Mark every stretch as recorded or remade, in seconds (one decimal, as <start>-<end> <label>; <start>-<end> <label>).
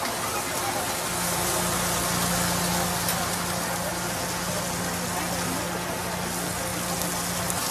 0.0-7.7 recorded